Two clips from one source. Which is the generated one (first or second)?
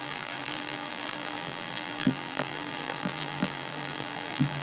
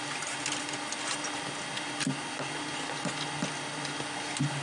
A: first